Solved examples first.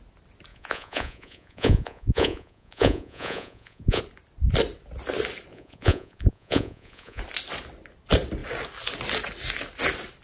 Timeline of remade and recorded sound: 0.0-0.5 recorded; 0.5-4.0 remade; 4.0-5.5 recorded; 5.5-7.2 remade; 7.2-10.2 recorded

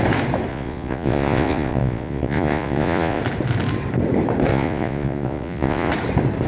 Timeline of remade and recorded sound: 0.0-0.5 recorded; 0.5-3.2 remade; 3.2-4.5 recorded; 4.5-5.9 remade; 5.9-6.5 recorded

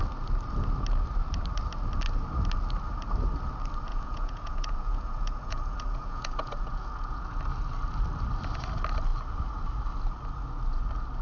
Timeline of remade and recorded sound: 0.0-3.9 recorded; 3.9-7.4 remade; 7.4-11.2 recorded

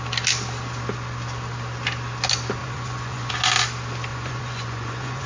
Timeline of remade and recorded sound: 0.0-2.6 recorded; 2.6-3.3 remade; 3.3-4.1 recorded; 4.1-5.3 remade

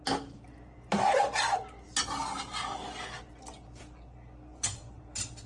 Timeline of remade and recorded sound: 0.0-4.5 recorded; 4.5-5.0 remade; 5.0-5.5 recorded

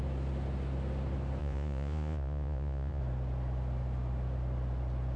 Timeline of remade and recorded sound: 0.0-1.4 recorded; 1.4-3.0 remade; 3.0-5.2 recorded

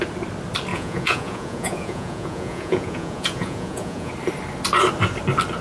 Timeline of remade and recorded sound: 0.0-0.7 recorded; 0.7-4.1 remade; 4.1-5.6 recorded